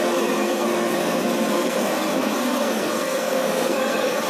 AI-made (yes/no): yes